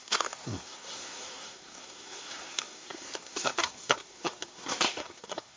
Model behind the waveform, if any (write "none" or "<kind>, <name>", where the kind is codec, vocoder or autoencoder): codec, SNAC